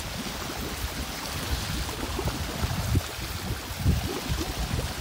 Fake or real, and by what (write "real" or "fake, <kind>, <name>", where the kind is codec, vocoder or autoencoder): real